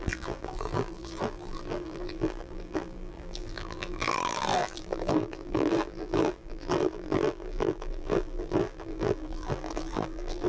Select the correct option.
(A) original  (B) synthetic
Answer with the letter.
B